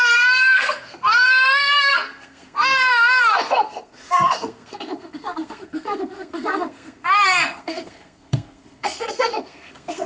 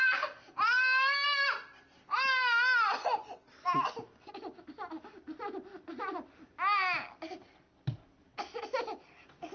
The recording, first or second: second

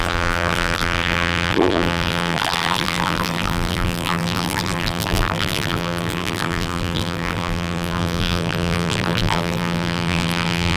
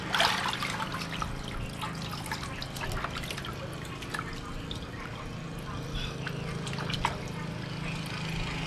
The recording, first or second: second